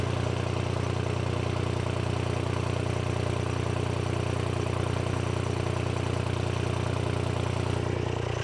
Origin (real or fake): real